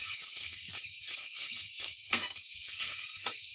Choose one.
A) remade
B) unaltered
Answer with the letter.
A